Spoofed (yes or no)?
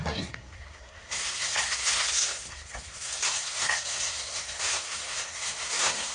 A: yes